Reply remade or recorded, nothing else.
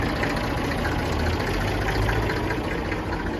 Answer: recorded